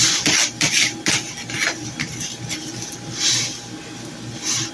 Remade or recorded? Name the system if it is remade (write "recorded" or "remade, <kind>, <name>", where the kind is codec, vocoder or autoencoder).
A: recorded